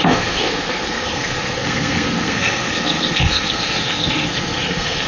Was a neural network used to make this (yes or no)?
yes